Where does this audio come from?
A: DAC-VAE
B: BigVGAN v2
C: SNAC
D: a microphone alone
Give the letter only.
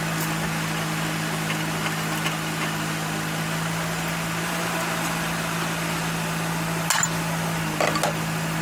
D